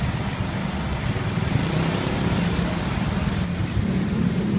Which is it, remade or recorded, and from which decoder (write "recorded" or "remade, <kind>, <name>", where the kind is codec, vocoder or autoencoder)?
recorded